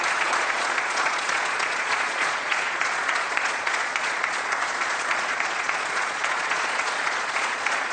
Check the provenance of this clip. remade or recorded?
remade